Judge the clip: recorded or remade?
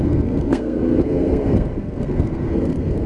remade